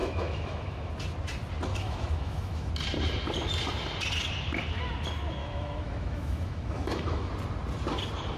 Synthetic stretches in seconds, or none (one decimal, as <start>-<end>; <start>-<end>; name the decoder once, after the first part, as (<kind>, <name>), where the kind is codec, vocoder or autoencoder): 0.0-0.9 (autoencoder, DAC-VAE); 1.7-2.7; 5.4-7.3